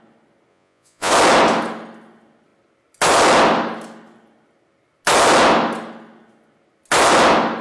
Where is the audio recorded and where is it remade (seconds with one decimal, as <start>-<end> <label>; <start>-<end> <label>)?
0.0-0.5 recorded; 0.5-1.1 remade; 1.1-7.6 recorded